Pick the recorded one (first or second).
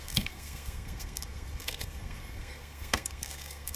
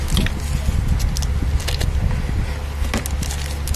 second